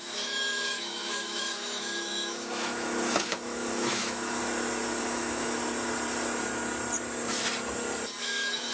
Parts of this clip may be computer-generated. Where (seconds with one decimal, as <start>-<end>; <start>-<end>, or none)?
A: 0.0-4.4; 5.0-5.6; 8.2-8.7